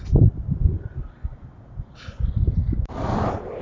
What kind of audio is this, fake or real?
real